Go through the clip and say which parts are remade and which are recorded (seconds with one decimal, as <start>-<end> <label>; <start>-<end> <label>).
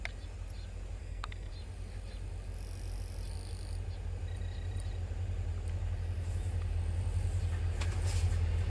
0.0-1.0 recorded; 1.0-1.5 remade; 1.5-8.7 recorded